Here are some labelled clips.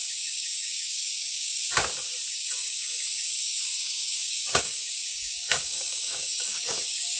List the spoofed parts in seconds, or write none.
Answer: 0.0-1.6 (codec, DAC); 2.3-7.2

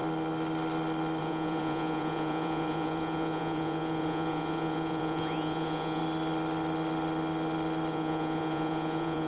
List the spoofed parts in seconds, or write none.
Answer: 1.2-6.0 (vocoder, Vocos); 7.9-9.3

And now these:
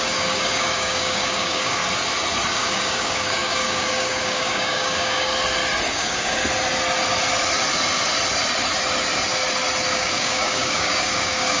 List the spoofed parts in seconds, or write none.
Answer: 0.0-1.8 (codec, DAC); 2.5-5.3; 5.9-6.4; 9.9-11.6

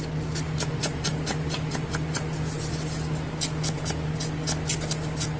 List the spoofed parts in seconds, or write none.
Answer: none